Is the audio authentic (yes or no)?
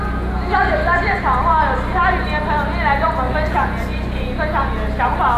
yes